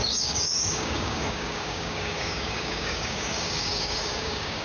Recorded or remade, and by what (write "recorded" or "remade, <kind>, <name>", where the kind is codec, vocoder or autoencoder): remade, codec, DAC